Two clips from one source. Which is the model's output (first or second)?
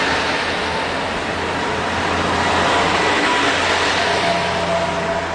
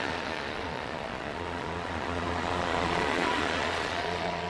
second